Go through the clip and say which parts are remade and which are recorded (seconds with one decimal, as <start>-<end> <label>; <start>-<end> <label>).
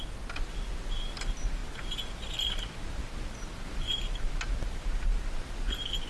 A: 0.0-6.1 recorded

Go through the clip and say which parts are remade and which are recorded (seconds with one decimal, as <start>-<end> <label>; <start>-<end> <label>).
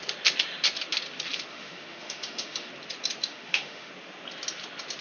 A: 0.0-1.5 recorded; 1.5-2.7 remade; 2.7-3.3 recorded; 3.3-3.9 remade; 3.9-5.0 recorded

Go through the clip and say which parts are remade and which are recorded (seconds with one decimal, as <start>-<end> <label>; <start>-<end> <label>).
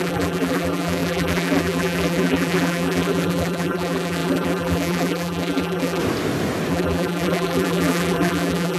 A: 0.0-6.0 remade; 6.0-6.7 recorded; 6.7-8.8 remade